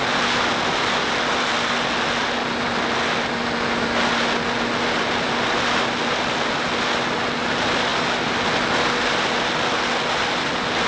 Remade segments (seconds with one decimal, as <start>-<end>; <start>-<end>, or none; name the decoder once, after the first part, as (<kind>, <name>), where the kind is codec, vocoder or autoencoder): none